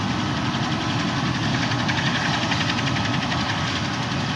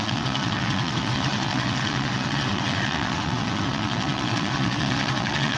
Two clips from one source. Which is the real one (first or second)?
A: first